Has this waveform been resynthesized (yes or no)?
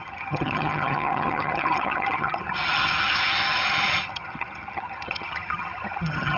yes